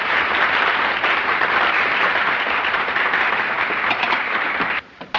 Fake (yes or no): yes